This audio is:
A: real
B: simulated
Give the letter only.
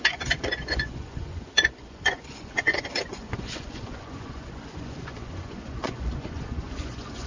B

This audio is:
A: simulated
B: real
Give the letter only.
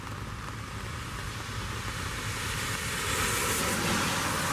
B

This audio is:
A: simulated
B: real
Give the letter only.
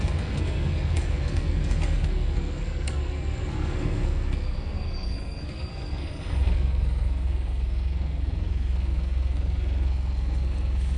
A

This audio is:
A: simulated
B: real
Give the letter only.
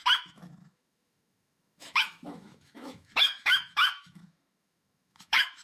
A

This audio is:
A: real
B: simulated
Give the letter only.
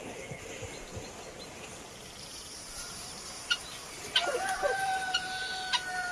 B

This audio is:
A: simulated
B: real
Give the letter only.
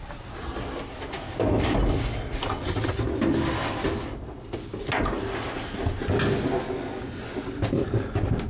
B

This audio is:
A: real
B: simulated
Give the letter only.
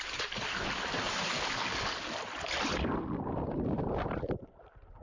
A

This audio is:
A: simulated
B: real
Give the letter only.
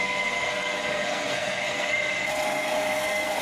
A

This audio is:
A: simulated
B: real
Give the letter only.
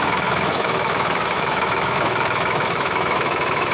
A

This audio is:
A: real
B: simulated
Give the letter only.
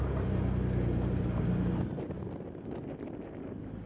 A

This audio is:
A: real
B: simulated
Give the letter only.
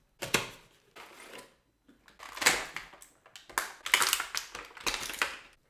A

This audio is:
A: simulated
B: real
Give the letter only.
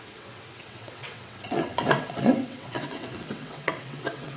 A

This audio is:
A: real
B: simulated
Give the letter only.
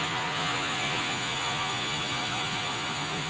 B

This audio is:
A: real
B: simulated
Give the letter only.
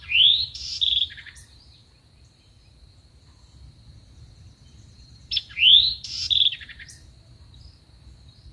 B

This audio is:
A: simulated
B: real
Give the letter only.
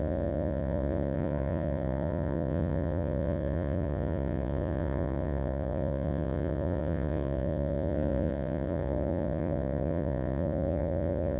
A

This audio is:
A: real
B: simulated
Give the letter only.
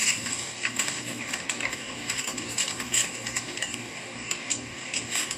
B